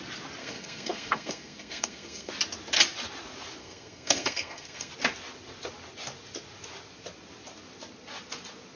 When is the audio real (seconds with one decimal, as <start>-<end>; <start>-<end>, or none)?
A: 0.0-0.4; 2.3-3.6; 4.9-8.8